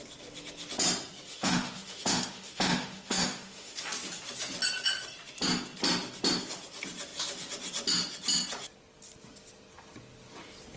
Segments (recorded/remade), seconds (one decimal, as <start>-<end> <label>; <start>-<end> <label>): 0.0-1.3 recorded; 1.3-3.8 remade; 3.8-10.8 recorded